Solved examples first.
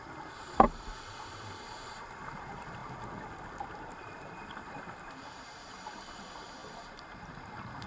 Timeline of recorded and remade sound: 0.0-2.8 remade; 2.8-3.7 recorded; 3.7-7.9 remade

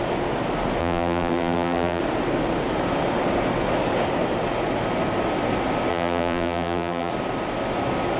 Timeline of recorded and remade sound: 0.0-0.8 recorded; 0.8-2.0 remade; 2.0-5.9 recorded; 5.9-7.1 remade; 7.1-8.2 recorded

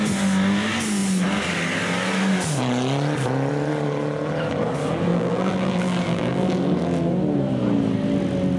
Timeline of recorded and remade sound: 0.0-5.1 recorded; 5.1-6.5 remade; 6.5-8.6 recorded

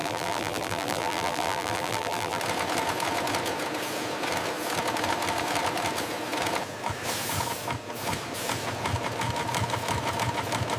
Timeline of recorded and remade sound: 0.0-2.4 remade; 2.4-10.8 recorded

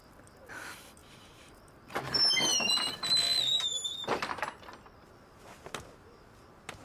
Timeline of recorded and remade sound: 0.0-1.0 recorded; 1.0-2.0 remade; 2.0-6.8 recorded